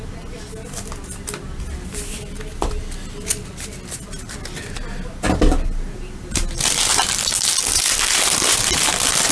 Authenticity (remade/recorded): recorded